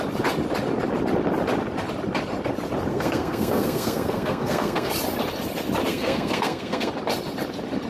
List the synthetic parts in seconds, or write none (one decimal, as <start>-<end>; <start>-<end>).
2.9-4.9; 5.9-6.9